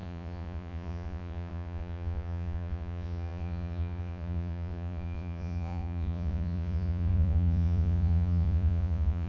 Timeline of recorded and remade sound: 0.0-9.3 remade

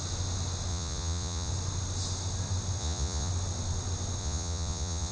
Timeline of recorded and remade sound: 0.0-0.7 recorded; 0.7-1.5 remade; 1.5-2.8 recorded; 2.8-3.3 remade; 3.3-4.2 recorded; 4.2-5.1 remade

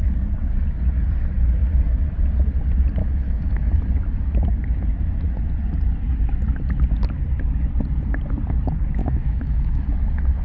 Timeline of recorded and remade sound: 0.0-3.0 recorded; 3.0-3.7 remade; 3.7-9.0 recorded; 9.0-9.8 remade; 9.8-10.4 recorded

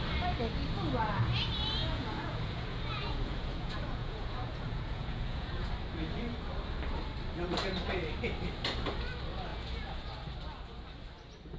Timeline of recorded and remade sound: 0.0-1.8 recorded; 1.8-5.7 remade; 5.7-9.5 recorded; 9.5-10.1 remade; 10.1-11.6 recorded

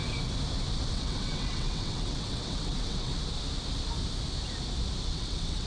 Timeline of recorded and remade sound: 0.0-0.9 recorded; 0.9-3.1 remade; 3.1-5.1 recorded; 5.1-5.7 remade

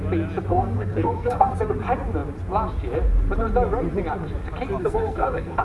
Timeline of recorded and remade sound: 0.0-0.5 recorded; 0.5-1.5 remade; 1.5-4.8 recorded; 4.8-5.6 remade